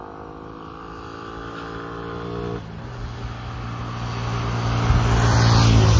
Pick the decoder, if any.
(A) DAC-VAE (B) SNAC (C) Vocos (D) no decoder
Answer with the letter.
D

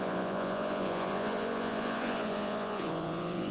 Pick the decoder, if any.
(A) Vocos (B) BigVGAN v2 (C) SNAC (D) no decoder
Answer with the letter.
A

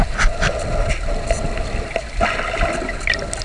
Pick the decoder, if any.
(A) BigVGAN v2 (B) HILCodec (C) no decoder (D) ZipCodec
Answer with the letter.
C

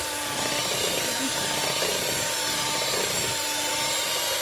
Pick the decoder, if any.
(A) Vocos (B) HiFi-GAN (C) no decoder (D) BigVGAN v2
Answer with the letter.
D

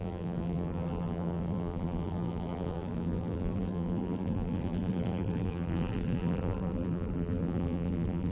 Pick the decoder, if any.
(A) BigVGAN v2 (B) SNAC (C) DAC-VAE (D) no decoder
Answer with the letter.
A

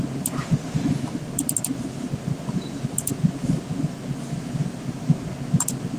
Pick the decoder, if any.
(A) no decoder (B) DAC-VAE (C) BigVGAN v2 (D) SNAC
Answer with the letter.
A